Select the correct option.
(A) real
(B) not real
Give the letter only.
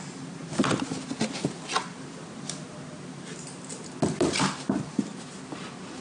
A